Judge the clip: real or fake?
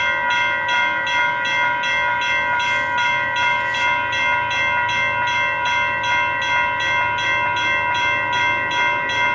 real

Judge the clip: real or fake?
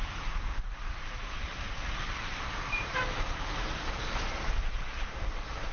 fake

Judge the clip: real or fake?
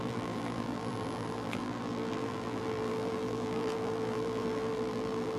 fake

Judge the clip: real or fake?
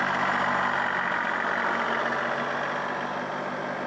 real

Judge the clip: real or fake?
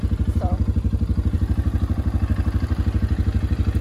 fake